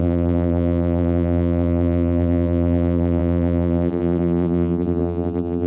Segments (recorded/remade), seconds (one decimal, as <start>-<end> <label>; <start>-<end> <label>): 0.0-5.7 remade